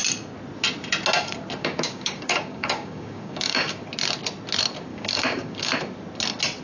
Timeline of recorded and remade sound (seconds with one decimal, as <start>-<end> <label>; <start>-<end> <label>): 0.0-1.6 recorded; 1.6-3.8 remade; 3.8-4.9 recorded; 4.9-5.7 remade; 5.7-6.6 recorded